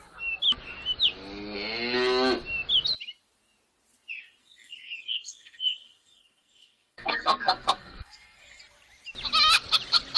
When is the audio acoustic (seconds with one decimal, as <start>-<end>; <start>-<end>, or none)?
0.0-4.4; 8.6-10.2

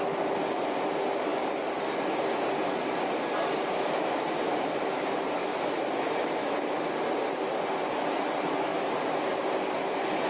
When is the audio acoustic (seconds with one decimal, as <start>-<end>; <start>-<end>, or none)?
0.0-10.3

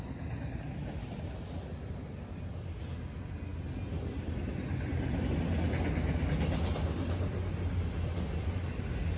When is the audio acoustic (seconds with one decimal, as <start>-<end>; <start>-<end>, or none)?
0.0-9.2

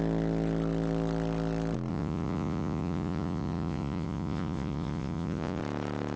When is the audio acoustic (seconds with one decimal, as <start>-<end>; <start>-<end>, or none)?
0.0-1.9; 5.6-6.2

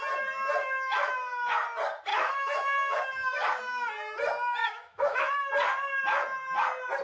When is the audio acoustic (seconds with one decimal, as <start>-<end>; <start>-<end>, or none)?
0.0-0.6; 1.1-2.1; 3.6-4.6; 5.5-7.0